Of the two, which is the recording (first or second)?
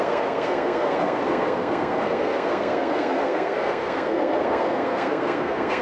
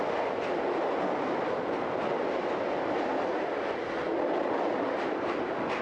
second